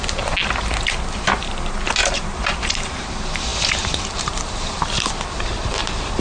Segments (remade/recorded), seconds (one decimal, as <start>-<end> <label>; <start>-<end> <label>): 0.0-2.0 recorded; 2.0-3.1 remade; 3.1-6.2 recorded